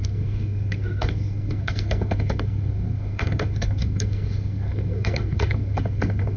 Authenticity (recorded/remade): remade